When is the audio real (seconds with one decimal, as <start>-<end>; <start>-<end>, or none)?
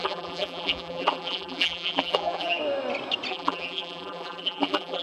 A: 2.6-3.3